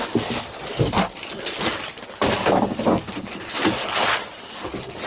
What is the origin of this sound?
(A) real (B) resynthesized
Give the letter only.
A